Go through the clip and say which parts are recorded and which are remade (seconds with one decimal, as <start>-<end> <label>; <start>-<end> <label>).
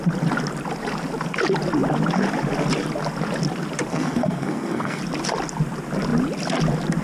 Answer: 0.0-3.9 recorded; 3.9-5.0 remade; 5.0-7.0 recorded